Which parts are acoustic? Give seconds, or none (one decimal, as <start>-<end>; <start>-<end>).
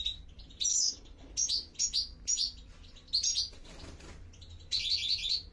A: 0.0-0.7; 1.3-5.5